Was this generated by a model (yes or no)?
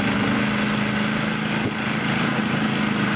no